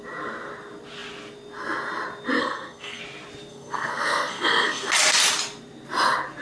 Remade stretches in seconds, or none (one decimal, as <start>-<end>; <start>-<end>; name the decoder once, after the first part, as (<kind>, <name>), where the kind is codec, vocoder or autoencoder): 2.4-3.0 (codec, SNAC); 3.5-4.9